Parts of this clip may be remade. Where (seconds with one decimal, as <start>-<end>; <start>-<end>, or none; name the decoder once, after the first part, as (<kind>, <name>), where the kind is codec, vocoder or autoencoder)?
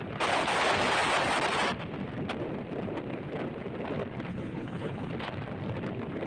4.3-5.1 (codec, HILCodec)